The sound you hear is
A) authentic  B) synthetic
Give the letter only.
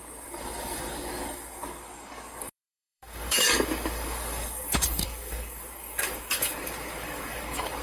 B